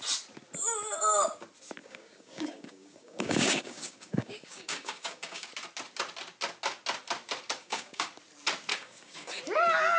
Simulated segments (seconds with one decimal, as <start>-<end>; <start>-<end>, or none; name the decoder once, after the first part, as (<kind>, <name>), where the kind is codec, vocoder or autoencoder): 1.8-5.5 (codec, DAC); 7.6-8.1; 8.7-9.4

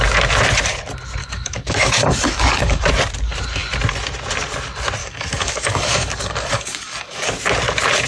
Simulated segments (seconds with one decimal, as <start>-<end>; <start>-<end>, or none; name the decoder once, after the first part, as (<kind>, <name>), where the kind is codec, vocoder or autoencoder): 1.2-2.8 (codec, DAC); 5.0-7.4

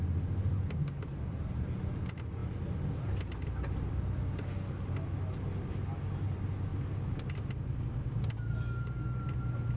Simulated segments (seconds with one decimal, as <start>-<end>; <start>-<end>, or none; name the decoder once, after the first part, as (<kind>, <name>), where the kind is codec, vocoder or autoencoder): none